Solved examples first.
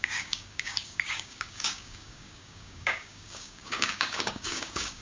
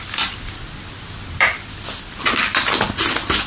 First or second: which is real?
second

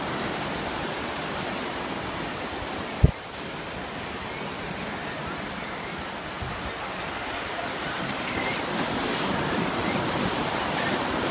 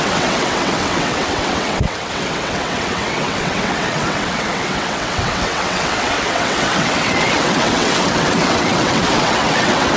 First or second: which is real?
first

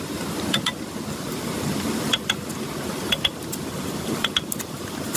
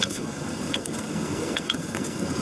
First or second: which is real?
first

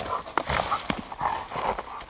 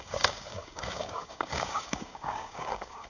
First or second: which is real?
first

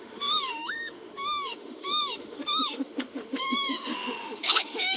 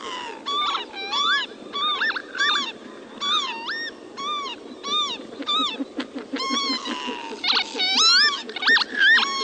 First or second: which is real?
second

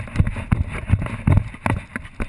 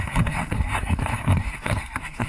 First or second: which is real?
first